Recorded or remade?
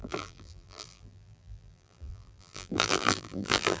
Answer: remade